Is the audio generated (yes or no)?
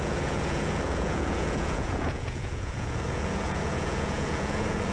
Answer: yes